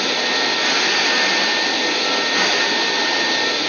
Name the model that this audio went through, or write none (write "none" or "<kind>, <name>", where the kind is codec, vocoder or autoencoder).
none